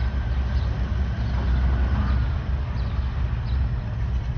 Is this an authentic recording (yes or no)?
yes